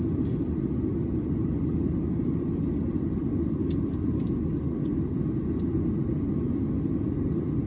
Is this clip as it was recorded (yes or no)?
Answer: yes